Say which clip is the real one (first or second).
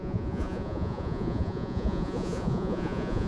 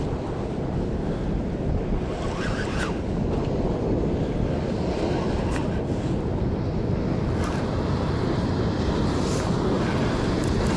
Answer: second